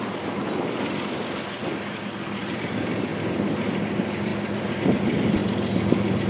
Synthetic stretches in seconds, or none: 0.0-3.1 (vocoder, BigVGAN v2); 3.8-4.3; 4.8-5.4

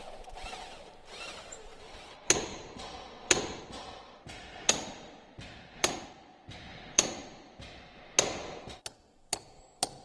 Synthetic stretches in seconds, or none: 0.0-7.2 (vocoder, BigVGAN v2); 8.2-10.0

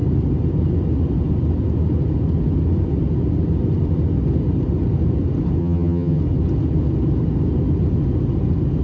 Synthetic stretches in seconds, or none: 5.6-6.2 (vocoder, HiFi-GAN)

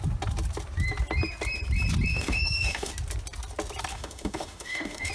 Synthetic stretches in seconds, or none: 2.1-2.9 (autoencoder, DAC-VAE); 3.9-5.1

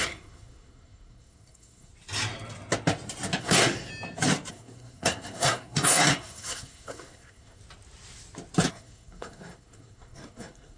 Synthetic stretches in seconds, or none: 0.0-1.9 (codec, SNAC); 3.4-3.9; 4.5-7.6; 8.7-10.8

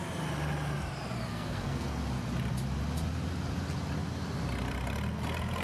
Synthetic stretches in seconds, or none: 1.3-2.0 (codec, SNAC)